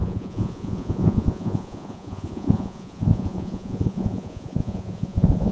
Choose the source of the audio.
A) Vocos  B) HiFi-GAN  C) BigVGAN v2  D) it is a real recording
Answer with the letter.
A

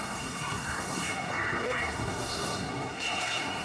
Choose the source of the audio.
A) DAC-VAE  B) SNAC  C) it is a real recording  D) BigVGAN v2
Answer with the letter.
B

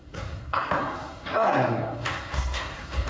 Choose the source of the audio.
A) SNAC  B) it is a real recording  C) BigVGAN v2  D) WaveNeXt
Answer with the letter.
A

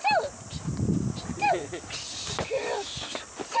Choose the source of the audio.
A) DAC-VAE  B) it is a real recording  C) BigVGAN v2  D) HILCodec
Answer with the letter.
B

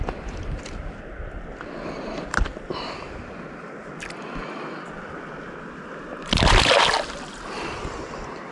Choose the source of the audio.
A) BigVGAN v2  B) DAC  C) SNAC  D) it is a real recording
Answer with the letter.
D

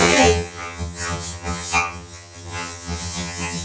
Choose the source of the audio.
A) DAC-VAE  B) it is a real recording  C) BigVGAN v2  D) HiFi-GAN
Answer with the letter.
D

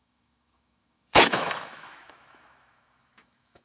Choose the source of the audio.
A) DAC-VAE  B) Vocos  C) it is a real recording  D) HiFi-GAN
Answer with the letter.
A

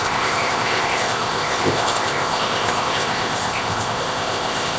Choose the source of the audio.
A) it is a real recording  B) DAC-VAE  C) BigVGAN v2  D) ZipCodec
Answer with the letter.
D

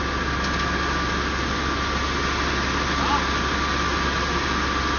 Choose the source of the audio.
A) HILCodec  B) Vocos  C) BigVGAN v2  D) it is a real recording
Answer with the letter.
D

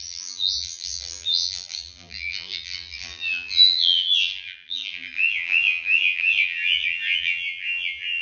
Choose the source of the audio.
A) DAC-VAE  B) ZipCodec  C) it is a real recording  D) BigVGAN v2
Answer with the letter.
D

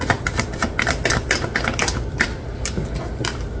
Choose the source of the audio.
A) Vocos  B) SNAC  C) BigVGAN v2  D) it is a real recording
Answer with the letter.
D